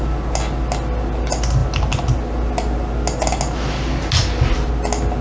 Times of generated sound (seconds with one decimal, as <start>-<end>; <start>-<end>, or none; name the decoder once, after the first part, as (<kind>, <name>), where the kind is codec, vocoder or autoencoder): none